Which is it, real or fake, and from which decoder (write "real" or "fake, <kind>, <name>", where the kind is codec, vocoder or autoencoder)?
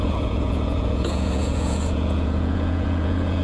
fake, vocoder, Vocos